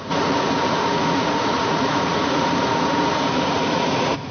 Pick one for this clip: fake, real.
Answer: fake